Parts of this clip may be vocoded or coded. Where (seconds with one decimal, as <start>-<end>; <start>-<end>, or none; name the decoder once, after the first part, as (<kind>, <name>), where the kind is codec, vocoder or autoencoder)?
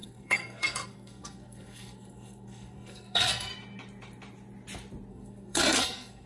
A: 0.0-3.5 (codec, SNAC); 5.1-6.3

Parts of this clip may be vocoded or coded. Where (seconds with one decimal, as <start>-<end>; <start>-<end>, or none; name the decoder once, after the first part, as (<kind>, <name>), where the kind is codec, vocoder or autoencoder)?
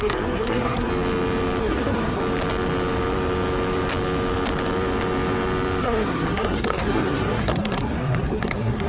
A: 0.0-0.9 (codec, SNAC); 1.6-2.2; 5.8-8.9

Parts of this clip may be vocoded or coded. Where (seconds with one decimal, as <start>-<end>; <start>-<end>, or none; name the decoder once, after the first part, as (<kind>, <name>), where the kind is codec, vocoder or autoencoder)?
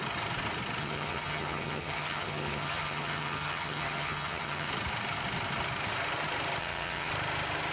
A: 0.8-4.7 (vocoder, HiFi-GAN); 6.6-7.1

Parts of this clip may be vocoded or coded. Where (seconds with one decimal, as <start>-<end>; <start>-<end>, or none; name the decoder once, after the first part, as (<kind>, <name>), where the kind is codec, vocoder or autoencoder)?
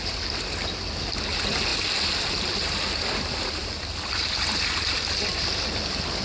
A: none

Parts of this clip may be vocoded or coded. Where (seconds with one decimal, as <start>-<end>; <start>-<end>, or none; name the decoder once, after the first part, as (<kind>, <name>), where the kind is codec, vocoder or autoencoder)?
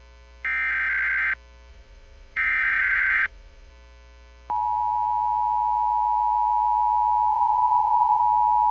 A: 1.7-3.7 (vocoder, Vocos); 7.3-8.2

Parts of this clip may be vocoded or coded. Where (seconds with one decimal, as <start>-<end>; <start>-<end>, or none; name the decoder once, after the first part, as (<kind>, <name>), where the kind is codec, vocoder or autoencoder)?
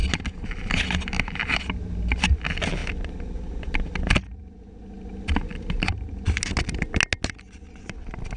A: none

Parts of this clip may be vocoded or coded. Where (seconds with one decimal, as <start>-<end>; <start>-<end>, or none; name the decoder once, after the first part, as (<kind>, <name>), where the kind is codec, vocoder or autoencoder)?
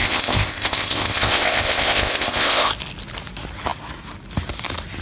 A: 0.0-2.7 (codec, ZipCodec)